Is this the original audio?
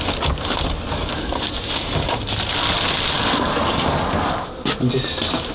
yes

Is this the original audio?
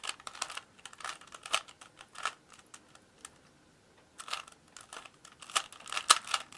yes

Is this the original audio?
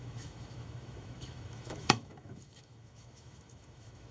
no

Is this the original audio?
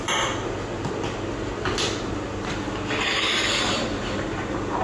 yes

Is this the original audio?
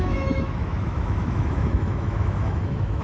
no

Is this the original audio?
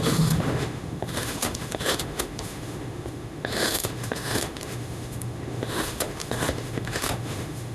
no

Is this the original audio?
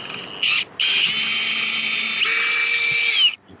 yes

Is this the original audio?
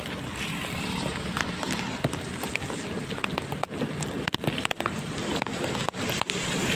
yes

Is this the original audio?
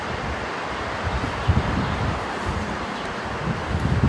yes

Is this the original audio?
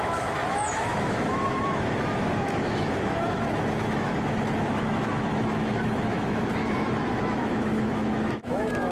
no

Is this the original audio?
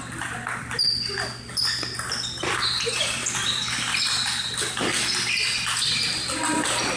yes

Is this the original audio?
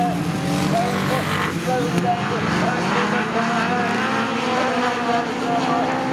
yes